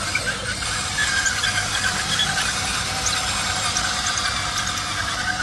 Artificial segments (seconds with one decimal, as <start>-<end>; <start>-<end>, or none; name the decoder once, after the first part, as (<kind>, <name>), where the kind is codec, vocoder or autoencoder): none